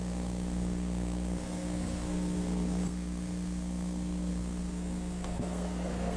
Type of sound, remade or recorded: remade